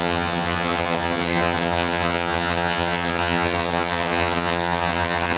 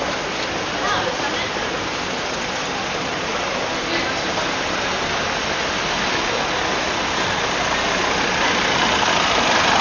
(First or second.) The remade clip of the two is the first